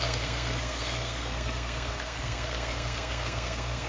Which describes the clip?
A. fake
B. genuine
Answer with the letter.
A